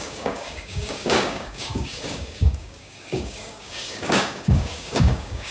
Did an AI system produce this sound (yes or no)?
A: yes